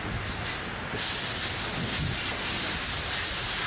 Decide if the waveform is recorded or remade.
recorded